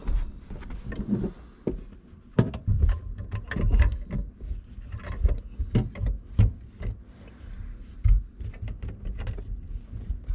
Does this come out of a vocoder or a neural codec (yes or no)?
no